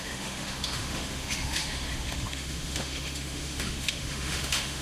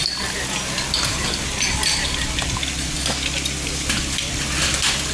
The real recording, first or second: second